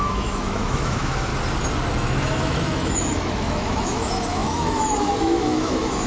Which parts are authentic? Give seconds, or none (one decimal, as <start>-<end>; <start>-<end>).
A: 1.3-1.9